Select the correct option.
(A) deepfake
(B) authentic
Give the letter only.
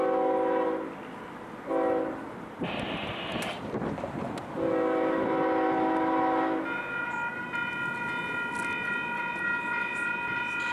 B